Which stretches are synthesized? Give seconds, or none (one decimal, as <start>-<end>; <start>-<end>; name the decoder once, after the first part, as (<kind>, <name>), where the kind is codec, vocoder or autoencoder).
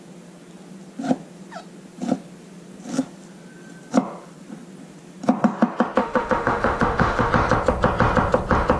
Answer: 6.0-7.3 (autoencoder, DAC-VAE)